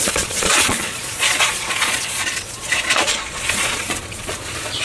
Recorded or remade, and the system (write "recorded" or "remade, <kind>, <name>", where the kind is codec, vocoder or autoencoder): remade, vocoder, Vocos